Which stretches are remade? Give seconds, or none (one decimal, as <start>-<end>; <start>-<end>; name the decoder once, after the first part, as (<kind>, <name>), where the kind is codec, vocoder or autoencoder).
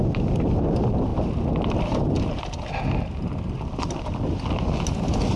none